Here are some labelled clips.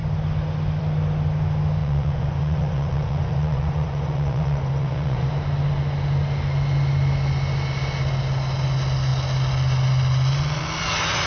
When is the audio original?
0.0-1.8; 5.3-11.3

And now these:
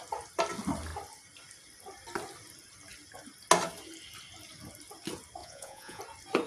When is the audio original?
0.0-5.4; 6.0-6.5

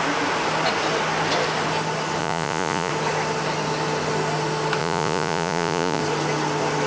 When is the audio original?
0.0-2.2; 2.9-4.8; 6.0-6.9

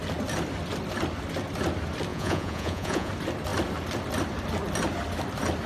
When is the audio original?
0.0-2.1; 3.1-5.7

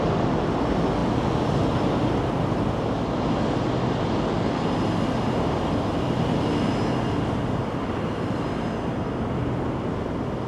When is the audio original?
0.0-10.5

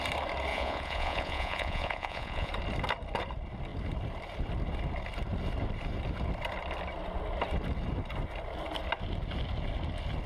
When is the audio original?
0.0-0.5; 2.5-10.3

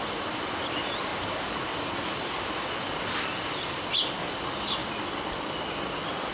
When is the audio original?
0.0-6.3